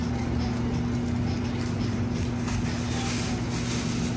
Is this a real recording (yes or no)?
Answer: yes